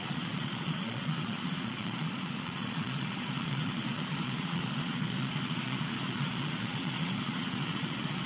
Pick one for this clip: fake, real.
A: fake